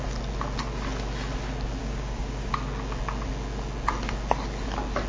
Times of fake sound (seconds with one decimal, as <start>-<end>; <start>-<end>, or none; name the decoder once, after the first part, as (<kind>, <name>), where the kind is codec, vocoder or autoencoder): 1.8-2.5 (codec, DAC)